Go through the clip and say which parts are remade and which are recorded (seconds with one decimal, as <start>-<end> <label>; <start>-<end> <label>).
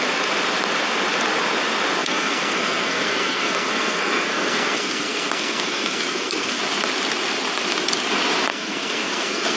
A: 0.0-2.0 recorded; 2.0-6.6 remade; 6.6-8.5 recorded; 8.5-9.6 remade